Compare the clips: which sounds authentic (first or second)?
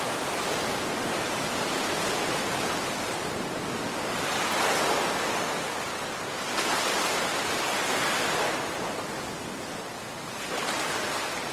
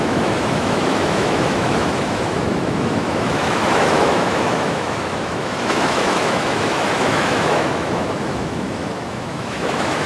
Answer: first